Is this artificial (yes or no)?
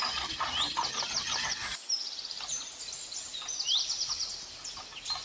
no